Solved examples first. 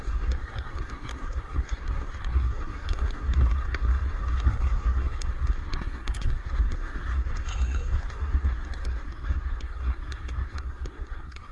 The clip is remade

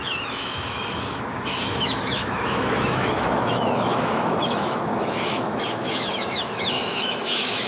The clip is remade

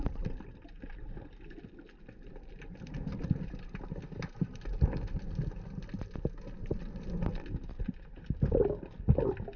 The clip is recorded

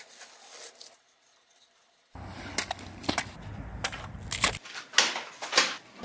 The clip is recorded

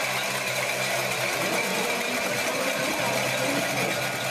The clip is recorded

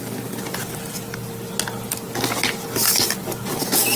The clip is recorded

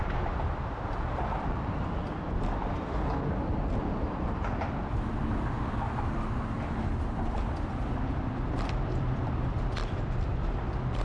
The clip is remade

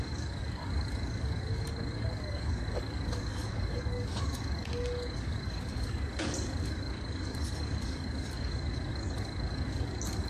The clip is remade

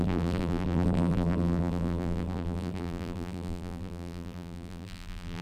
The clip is remade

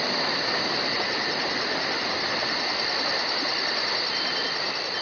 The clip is recorded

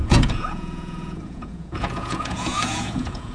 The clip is remade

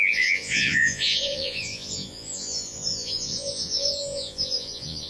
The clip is remade